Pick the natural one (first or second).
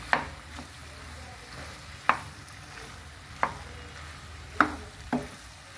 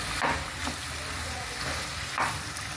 first